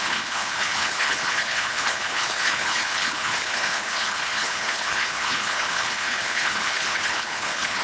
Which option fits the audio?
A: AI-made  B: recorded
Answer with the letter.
A